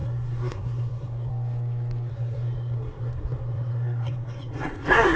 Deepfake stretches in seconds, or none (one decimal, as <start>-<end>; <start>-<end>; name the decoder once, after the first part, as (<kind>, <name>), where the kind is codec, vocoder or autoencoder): 0.0-1.3 (codec, SNAC); 2.1-5.2